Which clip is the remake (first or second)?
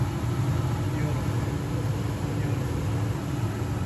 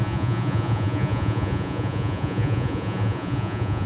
second